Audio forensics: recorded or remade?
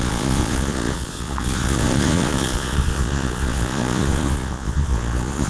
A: remade